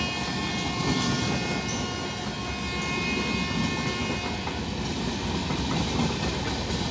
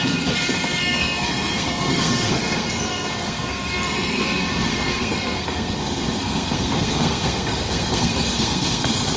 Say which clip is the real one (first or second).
first